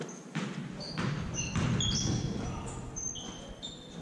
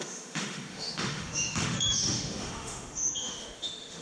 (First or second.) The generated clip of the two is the second